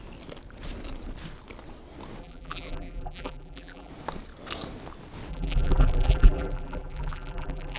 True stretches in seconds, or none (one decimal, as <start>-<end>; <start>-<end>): 0.0-2.2; 3.9-5.3